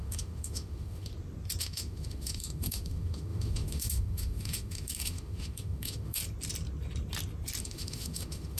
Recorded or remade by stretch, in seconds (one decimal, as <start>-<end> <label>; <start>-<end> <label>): 0.0-1.1 remade; 1.1-1.6 recorded; 1.6-6.2 remade; 6.2-7.6 recorded; 7.6-8.6 remade